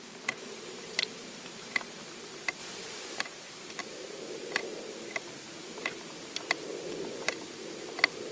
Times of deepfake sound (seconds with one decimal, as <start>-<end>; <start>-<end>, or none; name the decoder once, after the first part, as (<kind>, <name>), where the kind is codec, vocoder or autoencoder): 2.6-3.2 (vocoder, Vocos); 6.7-7.3